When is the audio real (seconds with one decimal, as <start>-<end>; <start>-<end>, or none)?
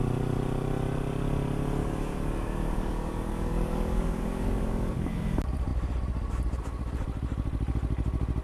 0.0-1.8; 5.1-8.4